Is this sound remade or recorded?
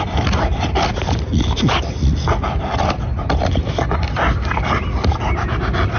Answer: recorded